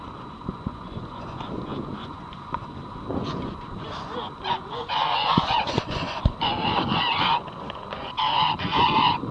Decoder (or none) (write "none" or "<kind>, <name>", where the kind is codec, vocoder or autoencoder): vocoder, Vocos